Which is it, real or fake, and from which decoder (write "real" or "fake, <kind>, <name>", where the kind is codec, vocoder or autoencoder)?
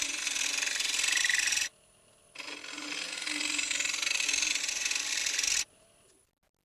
real